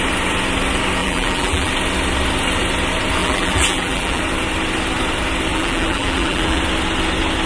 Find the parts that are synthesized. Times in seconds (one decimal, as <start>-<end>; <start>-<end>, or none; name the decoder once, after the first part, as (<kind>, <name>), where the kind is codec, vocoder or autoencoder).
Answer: 1.0-1.7 (vocoder, BigVGAN v2); 3.2-4.2; 5.5-6.6

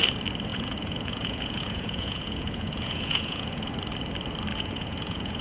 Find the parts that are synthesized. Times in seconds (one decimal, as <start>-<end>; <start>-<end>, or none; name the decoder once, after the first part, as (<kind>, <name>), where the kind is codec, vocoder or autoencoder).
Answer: 0.5-3.7 (vocoder, Vocos); 4.5-5.4

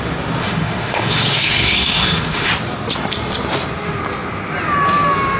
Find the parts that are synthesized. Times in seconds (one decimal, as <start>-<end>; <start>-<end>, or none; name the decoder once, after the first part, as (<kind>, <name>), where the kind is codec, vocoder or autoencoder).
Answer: 0.4-2.5 (autoencoder, DAC-VAE)

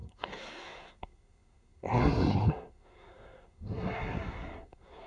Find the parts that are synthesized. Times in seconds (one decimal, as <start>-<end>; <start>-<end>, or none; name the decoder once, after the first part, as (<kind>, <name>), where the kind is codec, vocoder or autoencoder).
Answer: 0.0-5.1 (codec, SNAC)

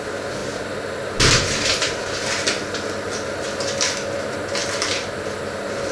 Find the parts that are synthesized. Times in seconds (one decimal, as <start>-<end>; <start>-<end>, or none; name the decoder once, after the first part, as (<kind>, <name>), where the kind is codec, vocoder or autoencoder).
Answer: 4.6-5.4 (vocoder, BigVGAN v2)

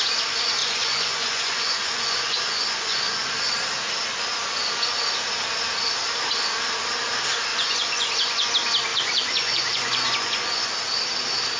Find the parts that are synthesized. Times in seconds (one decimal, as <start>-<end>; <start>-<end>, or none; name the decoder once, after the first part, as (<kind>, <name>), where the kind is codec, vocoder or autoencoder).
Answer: 0.6-3.3 (vocoder, Vocos); 7.5-8.5; 8.9-10.7

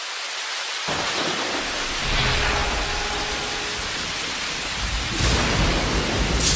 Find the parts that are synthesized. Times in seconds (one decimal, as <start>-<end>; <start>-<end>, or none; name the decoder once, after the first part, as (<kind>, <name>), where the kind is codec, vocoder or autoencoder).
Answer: none